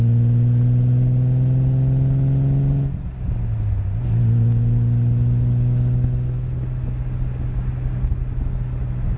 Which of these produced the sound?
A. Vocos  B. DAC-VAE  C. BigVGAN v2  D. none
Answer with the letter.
D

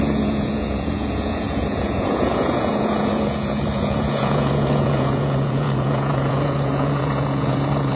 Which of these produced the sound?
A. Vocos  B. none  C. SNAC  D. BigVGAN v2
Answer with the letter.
A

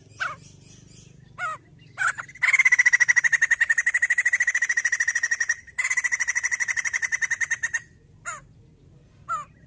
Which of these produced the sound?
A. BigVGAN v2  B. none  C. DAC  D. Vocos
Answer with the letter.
B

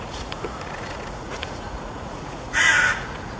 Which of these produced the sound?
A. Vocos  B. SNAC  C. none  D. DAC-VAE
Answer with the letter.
A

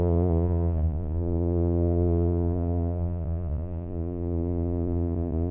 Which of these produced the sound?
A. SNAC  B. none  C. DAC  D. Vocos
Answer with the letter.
D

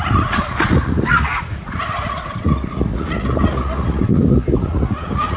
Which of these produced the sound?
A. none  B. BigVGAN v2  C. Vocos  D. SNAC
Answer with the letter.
C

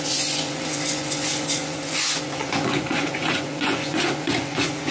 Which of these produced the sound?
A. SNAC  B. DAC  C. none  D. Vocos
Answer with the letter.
D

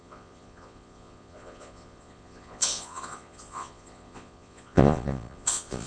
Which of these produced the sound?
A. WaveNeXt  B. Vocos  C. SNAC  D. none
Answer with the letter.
B